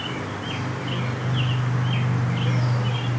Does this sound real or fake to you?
real